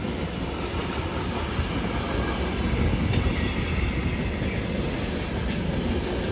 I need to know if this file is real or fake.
real